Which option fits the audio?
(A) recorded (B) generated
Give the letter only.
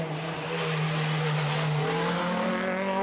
A